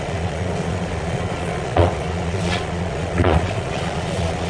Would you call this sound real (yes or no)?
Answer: no